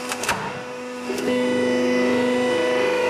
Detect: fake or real fake